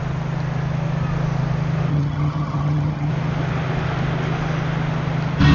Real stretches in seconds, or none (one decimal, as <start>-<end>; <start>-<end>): 0.0-1.9; 3.1-5.5